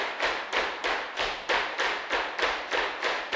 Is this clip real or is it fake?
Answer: real